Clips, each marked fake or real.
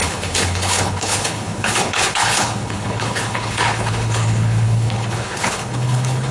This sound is fake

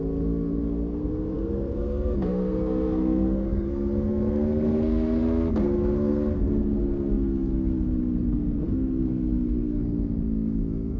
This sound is fake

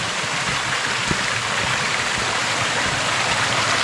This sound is real